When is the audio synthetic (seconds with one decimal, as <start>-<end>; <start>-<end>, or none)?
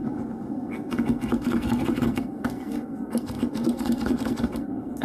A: 0.0-5.0